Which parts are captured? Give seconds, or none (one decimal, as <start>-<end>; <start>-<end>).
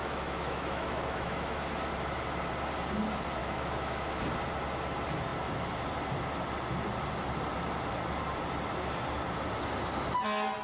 1.6-3.4; 4.2-10.6